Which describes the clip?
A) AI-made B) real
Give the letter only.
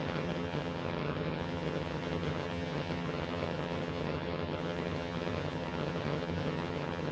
A